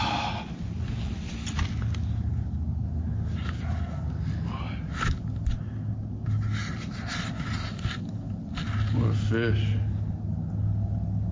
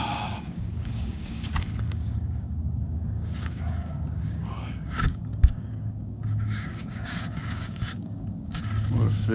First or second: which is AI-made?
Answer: second